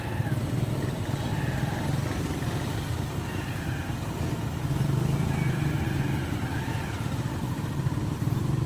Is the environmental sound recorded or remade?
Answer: recorded